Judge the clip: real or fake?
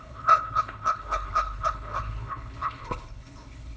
fake